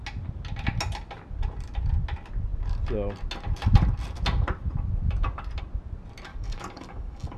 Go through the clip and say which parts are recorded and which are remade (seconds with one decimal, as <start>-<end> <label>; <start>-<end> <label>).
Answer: 0.0-6.3 recorded; 6.3-7.4 remade